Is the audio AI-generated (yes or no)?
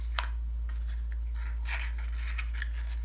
no